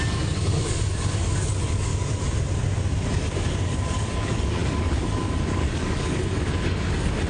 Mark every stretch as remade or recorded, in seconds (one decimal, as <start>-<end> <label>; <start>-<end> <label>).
0.0-1.9 remade; 1.9-3.1 recorded; 3.1-7.3 remade